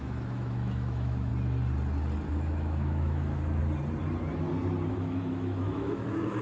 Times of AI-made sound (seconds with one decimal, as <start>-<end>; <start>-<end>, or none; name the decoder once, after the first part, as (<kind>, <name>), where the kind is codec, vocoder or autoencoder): 0.0-1.3 (autoencoder, DAC-VAE); 2.3-3.6; 4.9-6.4